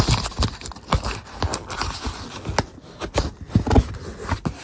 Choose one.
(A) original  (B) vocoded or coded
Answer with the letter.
A